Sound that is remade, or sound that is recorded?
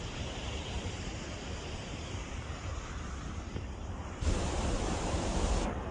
remade